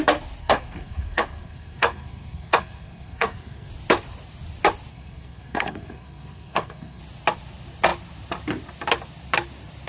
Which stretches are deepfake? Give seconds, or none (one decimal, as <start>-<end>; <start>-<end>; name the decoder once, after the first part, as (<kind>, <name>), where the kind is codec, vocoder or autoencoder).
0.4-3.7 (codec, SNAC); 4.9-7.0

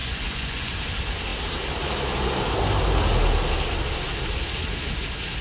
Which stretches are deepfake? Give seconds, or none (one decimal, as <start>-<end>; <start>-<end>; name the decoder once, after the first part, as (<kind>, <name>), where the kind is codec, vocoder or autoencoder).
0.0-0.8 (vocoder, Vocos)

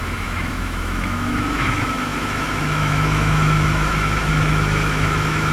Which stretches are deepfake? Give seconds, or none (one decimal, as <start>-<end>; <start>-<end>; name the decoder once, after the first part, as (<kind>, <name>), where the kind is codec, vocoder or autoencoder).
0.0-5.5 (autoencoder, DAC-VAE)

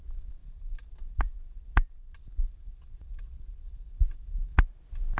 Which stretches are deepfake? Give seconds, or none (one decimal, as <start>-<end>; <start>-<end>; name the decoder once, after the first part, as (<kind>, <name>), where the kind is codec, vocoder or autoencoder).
none

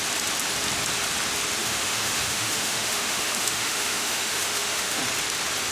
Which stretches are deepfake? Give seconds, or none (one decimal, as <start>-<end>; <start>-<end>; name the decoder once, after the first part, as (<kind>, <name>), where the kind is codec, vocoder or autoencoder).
1.6-5.0 (autoencoder, DAC-VAE)

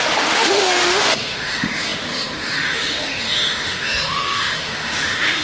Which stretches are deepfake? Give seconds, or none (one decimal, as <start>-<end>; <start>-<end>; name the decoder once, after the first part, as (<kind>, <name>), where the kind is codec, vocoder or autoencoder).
0.0-5.4 (autoencoder, DAC-VAE)

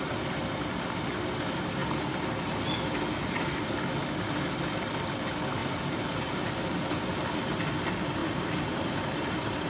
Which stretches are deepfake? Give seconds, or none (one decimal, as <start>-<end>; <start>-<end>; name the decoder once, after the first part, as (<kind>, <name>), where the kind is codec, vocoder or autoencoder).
5.6-6.5 (vocoder, BigVGAN v2); 8.2-9.7